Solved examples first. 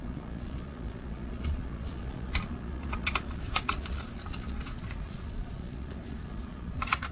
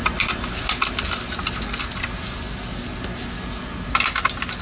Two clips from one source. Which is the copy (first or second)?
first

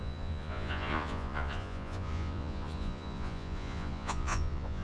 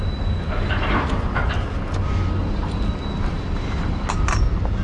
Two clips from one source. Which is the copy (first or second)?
first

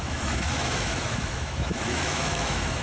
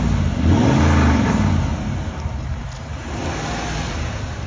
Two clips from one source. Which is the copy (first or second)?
first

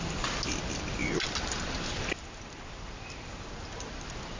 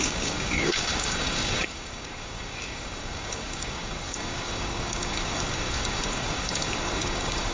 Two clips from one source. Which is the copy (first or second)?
second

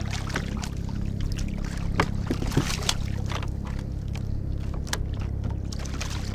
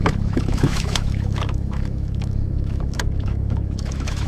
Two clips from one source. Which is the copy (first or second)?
second